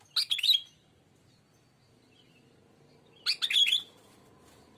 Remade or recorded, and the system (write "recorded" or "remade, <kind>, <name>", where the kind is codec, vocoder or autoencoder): recorded